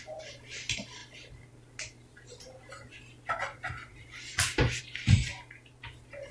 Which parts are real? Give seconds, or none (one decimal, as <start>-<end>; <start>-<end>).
0.0-6.3